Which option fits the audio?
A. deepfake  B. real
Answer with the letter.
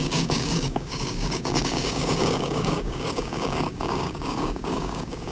A